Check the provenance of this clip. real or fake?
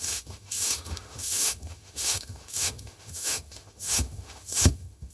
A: fake